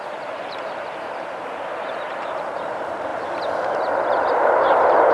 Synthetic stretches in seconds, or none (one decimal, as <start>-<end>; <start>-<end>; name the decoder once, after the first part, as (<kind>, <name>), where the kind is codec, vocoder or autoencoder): 0.0-3.1 (vocoder, BigVGAN v2); 4.3-5.1